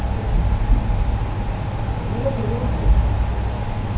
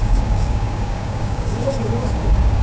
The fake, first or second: second